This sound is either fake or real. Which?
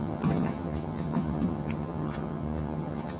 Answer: fake